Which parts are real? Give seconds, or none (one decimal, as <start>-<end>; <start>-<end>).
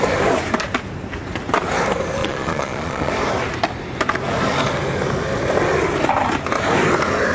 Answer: 0.0-2.2; 3.1-7.3